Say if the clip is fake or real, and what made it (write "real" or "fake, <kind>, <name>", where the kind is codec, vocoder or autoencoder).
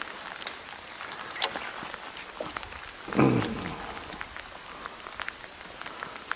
real